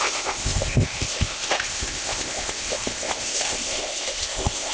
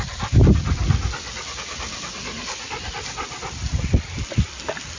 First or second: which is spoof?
first